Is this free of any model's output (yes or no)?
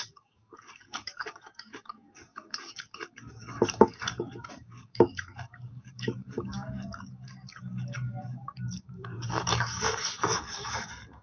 no